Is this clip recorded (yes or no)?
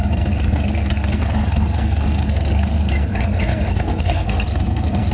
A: no